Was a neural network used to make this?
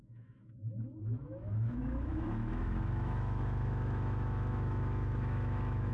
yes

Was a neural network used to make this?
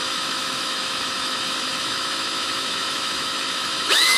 yes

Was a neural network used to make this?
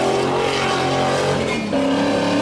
no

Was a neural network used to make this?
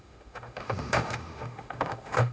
yes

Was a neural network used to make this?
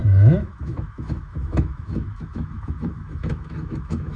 yes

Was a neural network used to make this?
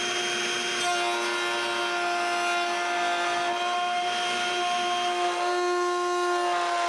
no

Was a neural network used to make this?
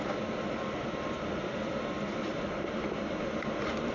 no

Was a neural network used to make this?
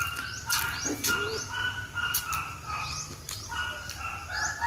no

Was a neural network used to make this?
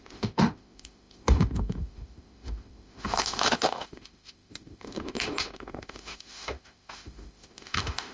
yes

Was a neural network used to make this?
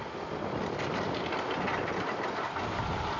no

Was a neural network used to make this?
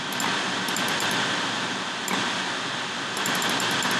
no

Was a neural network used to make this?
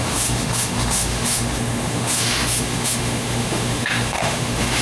yes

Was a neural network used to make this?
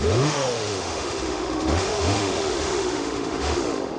yes